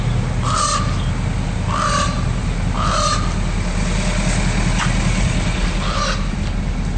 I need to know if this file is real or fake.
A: real